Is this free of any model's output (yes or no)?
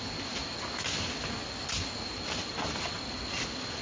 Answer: yes